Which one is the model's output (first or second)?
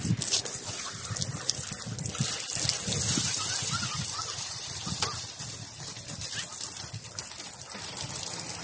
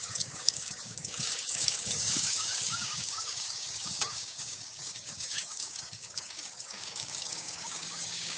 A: second